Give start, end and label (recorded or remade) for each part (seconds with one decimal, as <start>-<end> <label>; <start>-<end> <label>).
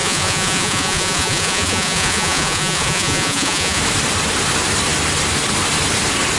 0.0-3.8 remade; 3.8-6.4 recorded